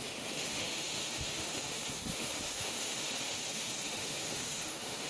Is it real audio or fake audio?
fake